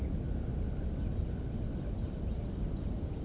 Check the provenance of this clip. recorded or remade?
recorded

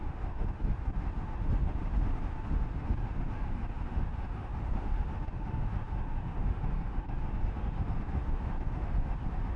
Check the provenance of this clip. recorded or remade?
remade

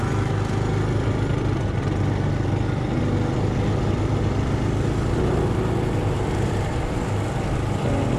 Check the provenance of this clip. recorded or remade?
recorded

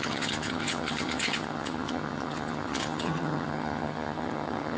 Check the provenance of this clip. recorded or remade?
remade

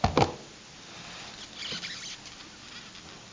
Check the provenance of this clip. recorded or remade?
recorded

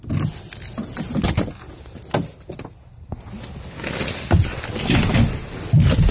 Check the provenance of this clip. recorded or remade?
recorded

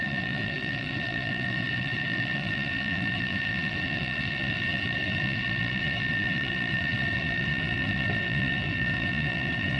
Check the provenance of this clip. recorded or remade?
remade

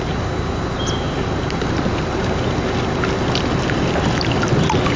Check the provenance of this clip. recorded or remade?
recorded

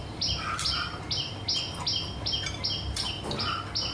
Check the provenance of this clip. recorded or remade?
recorded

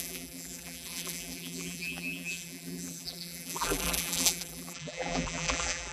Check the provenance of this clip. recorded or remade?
remade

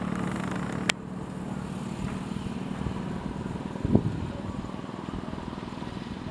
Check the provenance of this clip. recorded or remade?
recorded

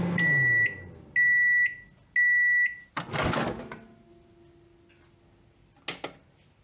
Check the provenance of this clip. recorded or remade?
recorded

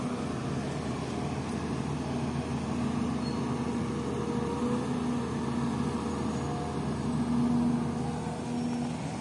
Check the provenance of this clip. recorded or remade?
recorded